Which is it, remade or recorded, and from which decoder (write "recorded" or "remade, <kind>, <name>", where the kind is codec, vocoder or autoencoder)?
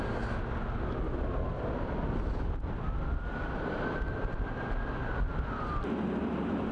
recorded